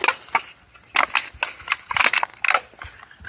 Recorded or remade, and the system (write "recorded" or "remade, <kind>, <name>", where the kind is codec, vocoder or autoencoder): recorded